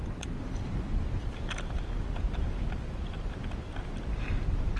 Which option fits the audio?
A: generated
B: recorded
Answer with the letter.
B